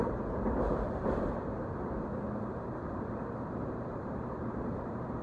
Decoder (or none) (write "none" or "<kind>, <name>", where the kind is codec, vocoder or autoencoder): vocoder, BigVGAN v2